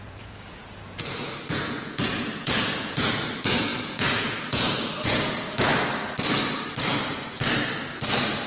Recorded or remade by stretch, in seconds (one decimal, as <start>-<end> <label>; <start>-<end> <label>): 0.0-5.7 remade; 5.7-8.5 recorded